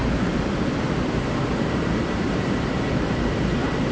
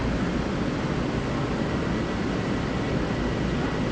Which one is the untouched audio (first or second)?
second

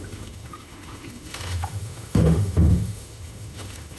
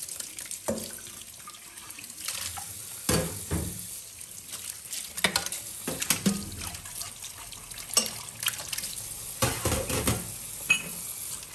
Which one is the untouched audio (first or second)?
second